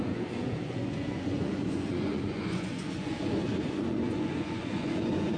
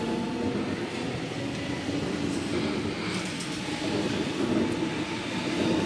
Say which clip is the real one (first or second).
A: second